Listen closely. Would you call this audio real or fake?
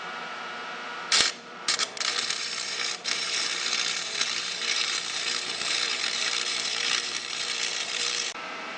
fake